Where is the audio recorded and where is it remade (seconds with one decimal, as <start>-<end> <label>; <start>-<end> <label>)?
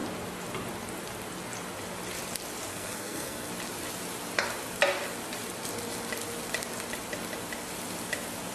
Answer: 0.0-2.7 recorded; 2.7-3.5 remade; 3.5-8.5 recorded